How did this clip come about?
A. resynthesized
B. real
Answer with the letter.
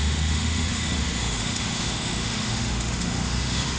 A